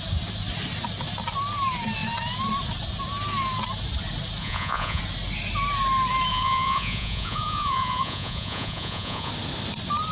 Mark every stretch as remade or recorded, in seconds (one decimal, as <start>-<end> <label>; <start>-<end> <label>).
0.0-4.4 recorded; 4.4-5.0 remade; 5.0-6.3 recorded; 6.3-9.3 remade; 9.3-10.1 recorded